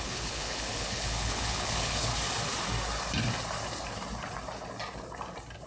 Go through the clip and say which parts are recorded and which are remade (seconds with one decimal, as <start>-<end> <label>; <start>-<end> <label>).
0.0-2.1 remade; 2.1-5.7 recorded

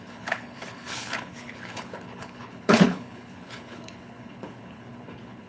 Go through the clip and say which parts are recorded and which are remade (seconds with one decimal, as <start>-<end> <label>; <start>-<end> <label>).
0.0-5.5 remade